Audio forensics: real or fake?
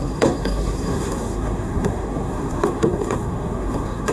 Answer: fake